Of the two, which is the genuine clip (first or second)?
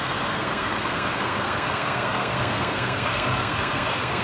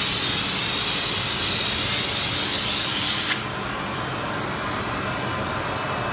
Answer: second